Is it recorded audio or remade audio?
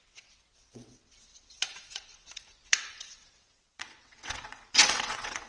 remade